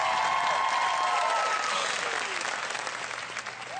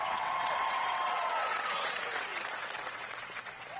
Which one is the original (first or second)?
first